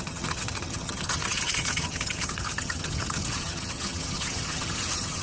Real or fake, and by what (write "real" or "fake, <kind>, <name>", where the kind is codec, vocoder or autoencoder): fake, vocoder, HiFi-GAN